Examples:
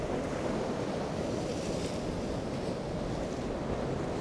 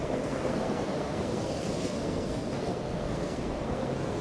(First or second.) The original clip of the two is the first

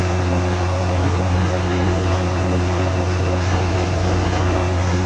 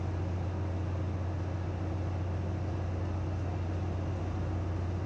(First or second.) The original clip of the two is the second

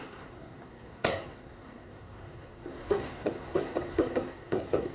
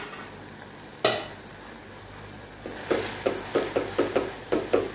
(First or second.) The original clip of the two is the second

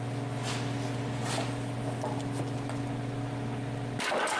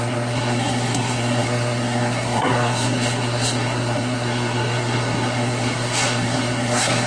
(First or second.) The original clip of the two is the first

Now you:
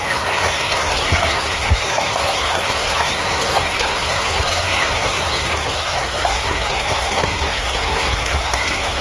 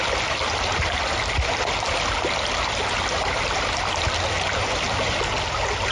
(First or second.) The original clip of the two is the second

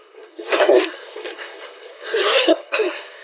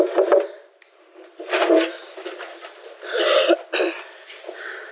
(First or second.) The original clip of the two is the second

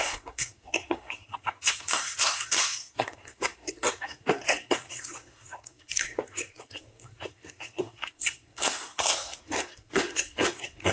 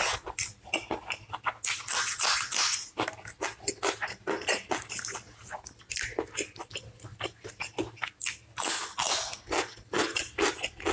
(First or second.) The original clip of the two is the second